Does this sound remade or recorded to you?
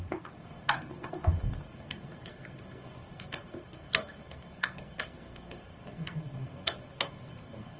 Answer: remade